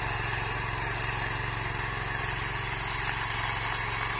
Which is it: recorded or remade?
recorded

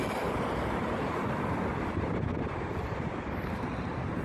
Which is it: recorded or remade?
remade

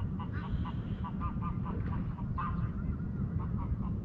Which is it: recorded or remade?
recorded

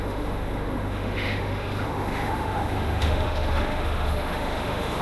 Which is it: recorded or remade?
remade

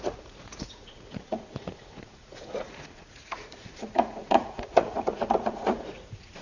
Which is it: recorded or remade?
remade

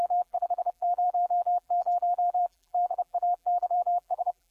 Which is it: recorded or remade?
remade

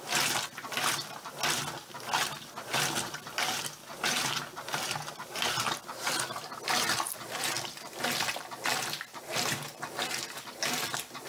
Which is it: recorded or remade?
recorded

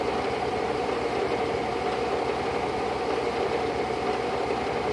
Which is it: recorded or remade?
remade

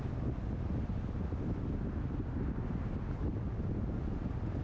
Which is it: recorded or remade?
recorded